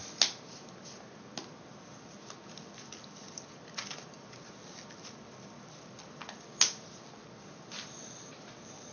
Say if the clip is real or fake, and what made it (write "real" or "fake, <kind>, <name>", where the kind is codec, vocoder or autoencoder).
real